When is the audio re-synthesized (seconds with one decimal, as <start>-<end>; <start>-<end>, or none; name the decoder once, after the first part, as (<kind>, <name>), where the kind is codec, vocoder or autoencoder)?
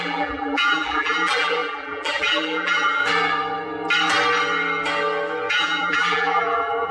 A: 0.0-3.0 (vocoder, BigVGAN v2); 5.5-6.9